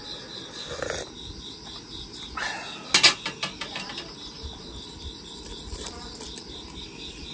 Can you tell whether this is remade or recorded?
recorded